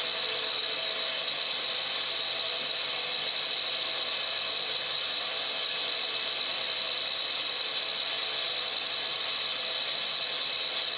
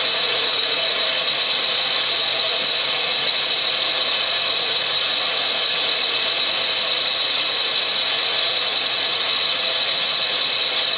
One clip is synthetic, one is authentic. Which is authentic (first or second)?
first